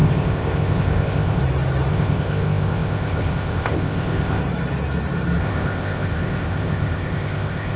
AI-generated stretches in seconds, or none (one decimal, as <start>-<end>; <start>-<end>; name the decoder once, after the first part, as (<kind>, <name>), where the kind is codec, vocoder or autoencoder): 0.0-1.4 (codec, ZipCodec); 1.9-4.4; 5.4-7.8